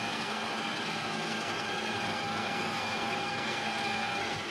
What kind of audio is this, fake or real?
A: fake